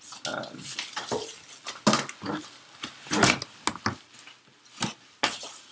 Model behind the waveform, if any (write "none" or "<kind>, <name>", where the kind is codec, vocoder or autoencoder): none